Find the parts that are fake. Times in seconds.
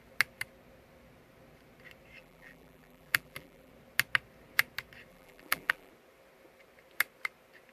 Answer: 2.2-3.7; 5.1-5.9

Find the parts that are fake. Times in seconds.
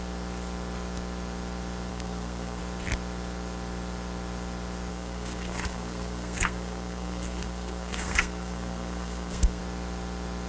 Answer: 1.9-2.6; 4.9-9.6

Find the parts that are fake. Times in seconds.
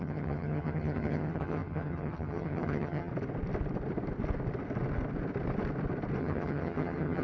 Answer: 0.0-3.1; 6.2-7.2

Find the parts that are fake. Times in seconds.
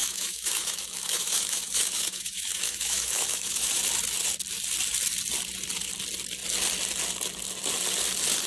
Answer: 0.0-3.8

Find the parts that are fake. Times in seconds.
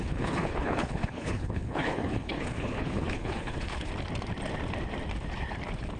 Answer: 0.0-3.9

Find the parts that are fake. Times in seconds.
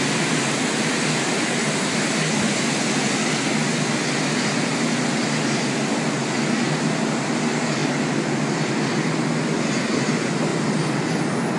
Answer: none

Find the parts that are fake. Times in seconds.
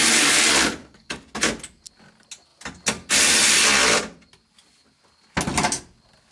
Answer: 0.8-1.3